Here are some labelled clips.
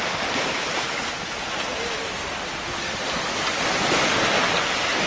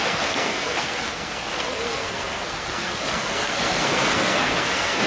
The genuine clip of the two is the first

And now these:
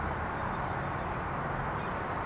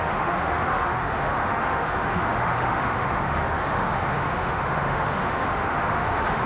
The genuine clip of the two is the first